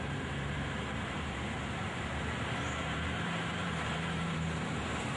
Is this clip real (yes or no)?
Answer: no